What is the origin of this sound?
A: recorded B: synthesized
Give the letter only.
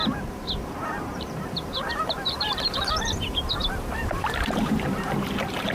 B